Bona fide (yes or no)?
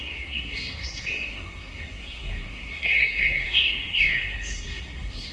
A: no